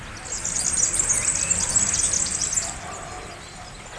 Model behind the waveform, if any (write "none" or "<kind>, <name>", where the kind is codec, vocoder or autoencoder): none